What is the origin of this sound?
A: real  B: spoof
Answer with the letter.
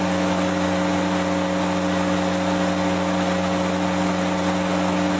A